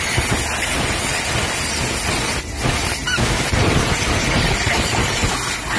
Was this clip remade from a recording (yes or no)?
no